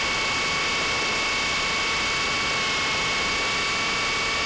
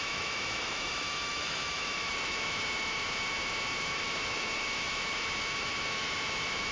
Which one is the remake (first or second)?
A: second